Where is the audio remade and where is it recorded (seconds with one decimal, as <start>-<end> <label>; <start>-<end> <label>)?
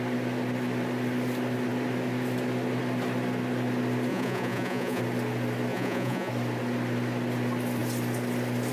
0.0-4.1 recorded; 4.1-5.0 remade; 5.0-5.7 recorded; 5.7-6.3 remade; 6.3-8.7 recorded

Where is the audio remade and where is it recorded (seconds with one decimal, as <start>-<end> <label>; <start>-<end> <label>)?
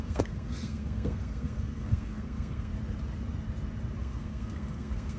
0.0-2.7 remade; 2.7-4.0 recorded; 4.0-5.2 remade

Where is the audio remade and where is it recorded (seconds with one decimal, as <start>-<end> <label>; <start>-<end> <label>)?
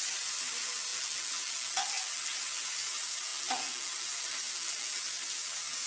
0.0-0.9 recorded; 0.9-2.3 remade; 2.3-3.3 recorded; 3.3-5.2 remade; 5.2-5.9 recorded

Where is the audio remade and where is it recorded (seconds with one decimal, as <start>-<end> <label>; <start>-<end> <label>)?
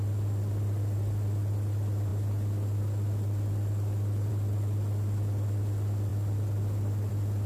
0.0-7.5 recorded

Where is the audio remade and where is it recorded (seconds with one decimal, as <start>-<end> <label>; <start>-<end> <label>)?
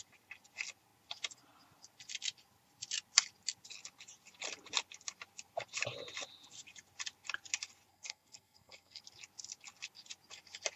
0.0-7.9 recorded; 7.9-9.0 remade; 9.0-10.8 recorded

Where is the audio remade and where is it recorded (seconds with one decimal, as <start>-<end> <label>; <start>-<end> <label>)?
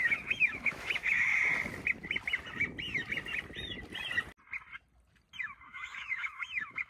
0.0-1.3 remade; 1.3-5.4 recorded; 5.4-6.9 remade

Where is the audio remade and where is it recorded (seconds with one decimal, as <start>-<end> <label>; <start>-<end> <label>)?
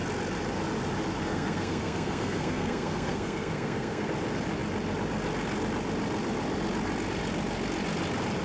0.0-1.2 recorded; 1.2-4.1 remade; 4.1-8.4 recorded